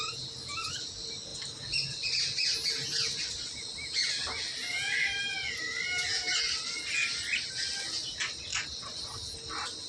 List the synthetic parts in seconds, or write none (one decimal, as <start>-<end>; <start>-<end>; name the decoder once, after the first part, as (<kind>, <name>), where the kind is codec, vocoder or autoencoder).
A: none